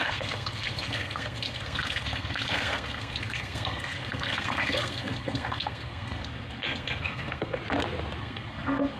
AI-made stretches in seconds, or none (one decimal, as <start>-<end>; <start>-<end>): 0.0-7.6; 8.2-9.0